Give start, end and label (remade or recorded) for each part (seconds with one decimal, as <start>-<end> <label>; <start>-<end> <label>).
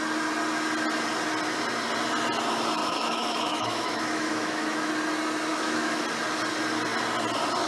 0.0-2.8 recorded; 2.8-4.9 remade; 4.9-5.5 recorded; 5.5-6.0 remade; 6.0-7.7 recorded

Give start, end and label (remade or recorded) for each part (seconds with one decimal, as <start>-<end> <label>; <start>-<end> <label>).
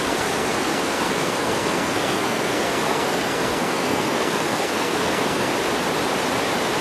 0.0-5.5 remade; 5.5-6.8 recorded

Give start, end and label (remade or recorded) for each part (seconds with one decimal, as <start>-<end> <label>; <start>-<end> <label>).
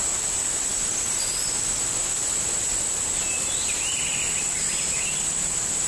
0.0-5.9 recorded